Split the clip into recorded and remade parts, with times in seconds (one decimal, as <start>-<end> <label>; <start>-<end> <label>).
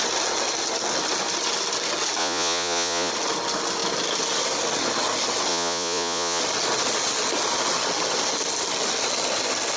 0.0-2.2 recorded; 2.2-3.1 remade; 3.1-5.5 recorded; 5.5-6.4 remade; 6.4-9.8 recorded